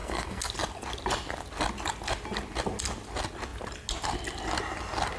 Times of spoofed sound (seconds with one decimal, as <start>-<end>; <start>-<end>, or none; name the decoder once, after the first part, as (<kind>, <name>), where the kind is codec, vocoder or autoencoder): 0.0-0.5 (codec, SNAC)